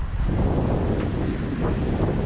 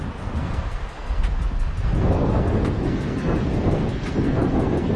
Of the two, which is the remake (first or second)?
second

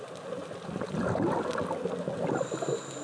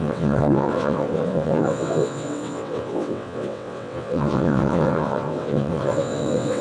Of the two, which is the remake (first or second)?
second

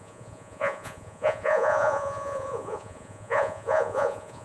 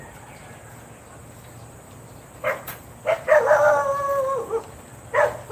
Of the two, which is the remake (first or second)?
first